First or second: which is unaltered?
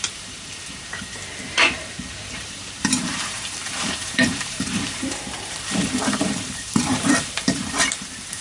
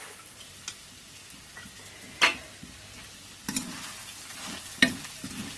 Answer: second